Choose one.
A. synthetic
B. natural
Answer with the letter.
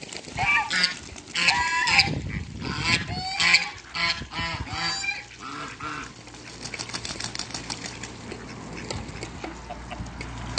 B